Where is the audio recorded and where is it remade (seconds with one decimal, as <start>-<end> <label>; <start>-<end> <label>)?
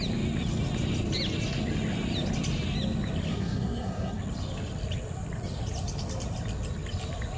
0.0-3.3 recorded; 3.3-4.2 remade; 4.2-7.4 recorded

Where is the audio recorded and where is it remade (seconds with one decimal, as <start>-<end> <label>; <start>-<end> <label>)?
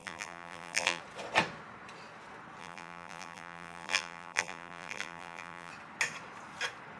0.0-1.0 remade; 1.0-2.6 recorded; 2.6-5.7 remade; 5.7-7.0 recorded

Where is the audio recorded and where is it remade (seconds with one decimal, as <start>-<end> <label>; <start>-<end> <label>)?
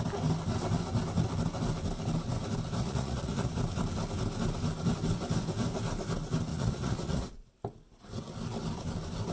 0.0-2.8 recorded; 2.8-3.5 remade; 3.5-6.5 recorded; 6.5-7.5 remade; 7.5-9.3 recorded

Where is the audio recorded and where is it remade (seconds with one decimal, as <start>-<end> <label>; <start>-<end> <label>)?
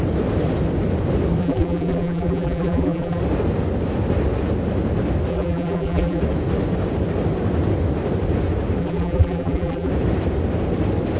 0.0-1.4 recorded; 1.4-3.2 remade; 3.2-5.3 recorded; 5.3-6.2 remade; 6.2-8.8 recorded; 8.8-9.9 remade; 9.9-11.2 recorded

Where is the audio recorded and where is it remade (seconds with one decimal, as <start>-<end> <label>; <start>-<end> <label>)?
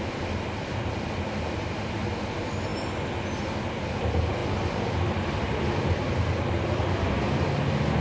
0.0-2.7 remade; 2.7-3.4 recorded; 3.4-8.0 remade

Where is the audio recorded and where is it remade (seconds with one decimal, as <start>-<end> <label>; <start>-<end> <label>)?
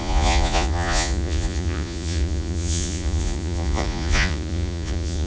0.0-5.3 remade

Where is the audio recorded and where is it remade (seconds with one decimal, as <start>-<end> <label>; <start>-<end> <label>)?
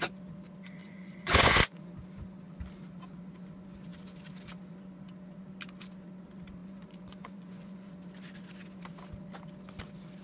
0.0-0.8 recorded; 0.8-1.9 remade; 1.9-6.6 recorded; 6.6-7.9 remade; 7.9-10.2 recorded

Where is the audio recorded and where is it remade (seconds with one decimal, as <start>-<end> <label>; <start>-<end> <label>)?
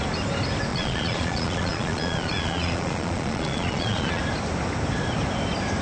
0.0-0.7 recorded; 0.7-4.2 remade; 4.2-5.8 recorded